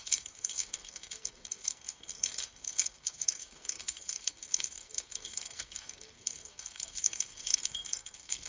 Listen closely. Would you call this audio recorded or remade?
remade